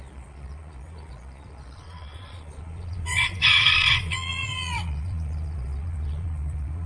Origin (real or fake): fake